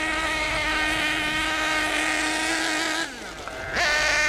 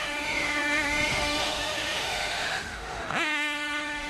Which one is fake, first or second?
second